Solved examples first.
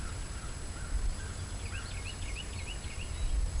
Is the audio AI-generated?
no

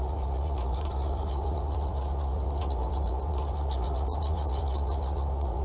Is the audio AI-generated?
yes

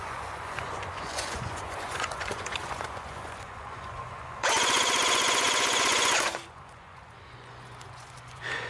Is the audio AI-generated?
yes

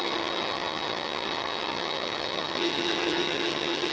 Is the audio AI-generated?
yes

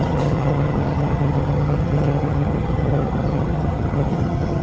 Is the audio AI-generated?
yes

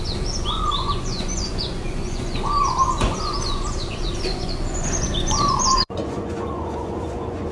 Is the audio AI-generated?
yes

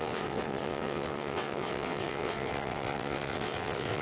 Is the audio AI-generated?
yes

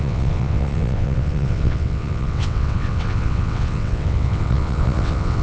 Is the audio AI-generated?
yes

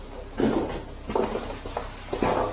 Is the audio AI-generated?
no